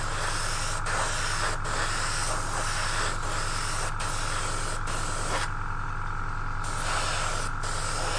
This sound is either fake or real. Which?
real